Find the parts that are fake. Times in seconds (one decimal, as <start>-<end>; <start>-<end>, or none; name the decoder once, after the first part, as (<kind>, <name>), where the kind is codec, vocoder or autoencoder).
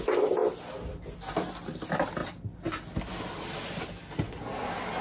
none